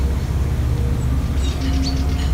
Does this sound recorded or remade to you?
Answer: recorded